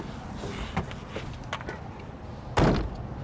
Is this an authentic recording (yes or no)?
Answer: yes